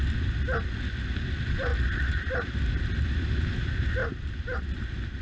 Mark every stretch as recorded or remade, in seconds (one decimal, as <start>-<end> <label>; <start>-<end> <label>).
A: 0.0-1.7 recorded; 1.7-2.8 remade; 2.8-5.2 recorded